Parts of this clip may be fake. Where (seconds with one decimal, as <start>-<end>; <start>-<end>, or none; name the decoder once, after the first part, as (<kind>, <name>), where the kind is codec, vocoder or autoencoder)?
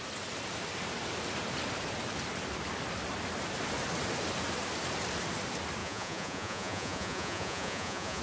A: 5.8-8.2 (vocoder, Vocos)